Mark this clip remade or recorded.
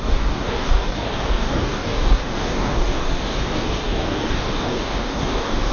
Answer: remade